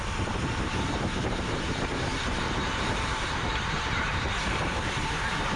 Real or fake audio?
fake